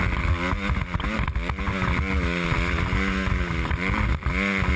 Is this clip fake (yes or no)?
no